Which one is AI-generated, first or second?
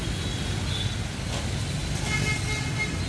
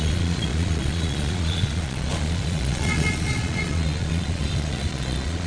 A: second